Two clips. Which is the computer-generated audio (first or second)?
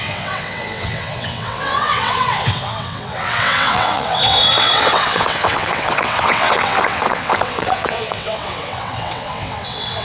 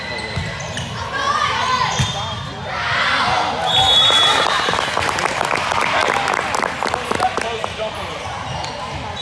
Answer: first